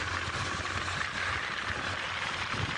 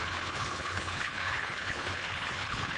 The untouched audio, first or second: first